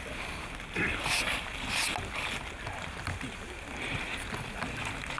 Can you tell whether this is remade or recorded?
recorded